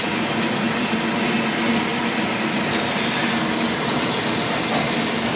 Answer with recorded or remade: recorded